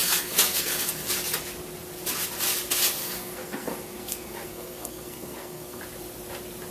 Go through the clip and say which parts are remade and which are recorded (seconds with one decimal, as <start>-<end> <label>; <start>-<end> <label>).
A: 0.0-1.1 remade; 1.1-3.0 recorded; 3.0-5.8 remade; 5.8-6.7 recorded